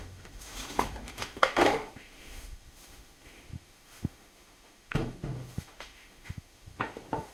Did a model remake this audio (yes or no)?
yes